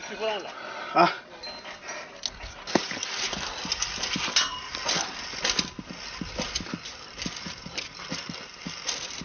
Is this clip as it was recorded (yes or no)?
yes